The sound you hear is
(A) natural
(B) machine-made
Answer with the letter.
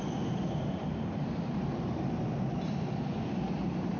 B